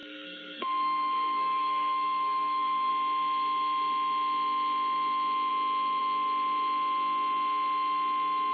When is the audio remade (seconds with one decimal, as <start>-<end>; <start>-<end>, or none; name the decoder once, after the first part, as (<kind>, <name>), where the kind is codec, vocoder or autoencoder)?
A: 0.0-2.9 (codec, SNAC)